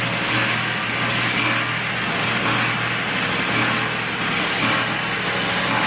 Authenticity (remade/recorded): recorded